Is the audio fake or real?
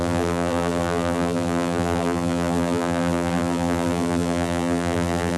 fake